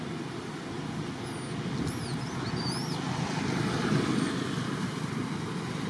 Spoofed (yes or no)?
no